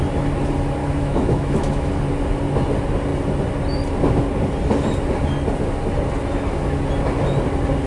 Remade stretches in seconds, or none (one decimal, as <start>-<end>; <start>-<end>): 0.8-2.0